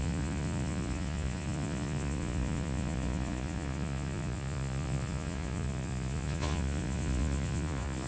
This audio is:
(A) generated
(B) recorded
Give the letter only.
A